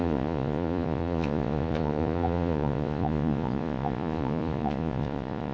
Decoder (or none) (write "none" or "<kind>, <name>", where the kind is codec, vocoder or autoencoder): vocoder, Vocos